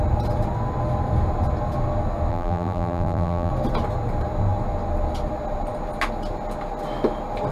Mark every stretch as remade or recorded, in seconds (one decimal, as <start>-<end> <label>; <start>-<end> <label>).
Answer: 0.0-2.3 recorded; 2.3-3.5 remade; 3.5-7.5 recorded